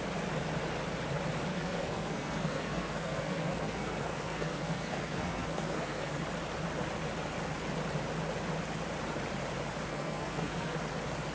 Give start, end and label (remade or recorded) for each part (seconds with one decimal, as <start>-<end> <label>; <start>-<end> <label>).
0.0-1.5 recorded; 1.5-6.2 remade; 6.2-9.9 recorded; 9.9-10.8 remade; 10.8-11.3 recorded